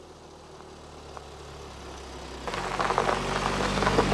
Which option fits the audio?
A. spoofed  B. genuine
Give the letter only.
B